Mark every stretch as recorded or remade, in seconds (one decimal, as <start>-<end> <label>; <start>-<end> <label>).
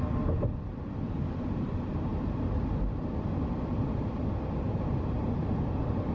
0.0-6.1 recorded